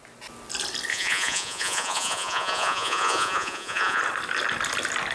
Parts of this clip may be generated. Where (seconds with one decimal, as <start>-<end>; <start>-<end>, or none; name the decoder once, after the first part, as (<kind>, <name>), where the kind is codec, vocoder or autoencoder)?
0.9-4.0 (vocoder, Vocos)